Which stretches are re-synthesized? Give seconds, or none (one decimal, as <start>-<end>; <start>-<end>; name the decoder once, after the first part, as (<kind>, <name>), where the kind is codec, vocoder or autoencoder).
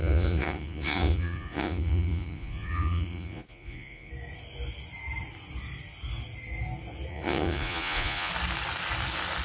0.0-4.1 (vocoder, Vocos); 7.1-8.3